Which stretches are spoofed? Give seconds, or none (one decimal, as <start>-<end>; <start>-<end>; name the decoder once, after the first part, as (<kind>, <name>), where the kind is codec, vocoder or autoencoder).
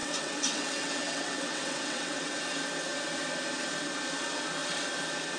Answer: 0.0-2.4 (vocoder, WaveNeXt)